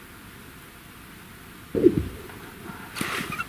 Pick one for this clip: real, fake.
real